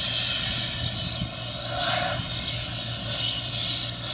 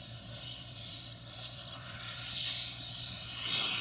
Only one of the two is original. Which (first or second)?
first